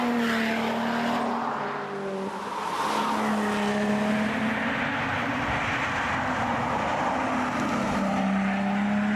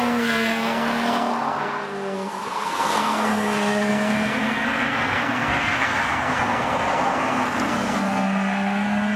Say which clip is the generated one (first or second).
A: second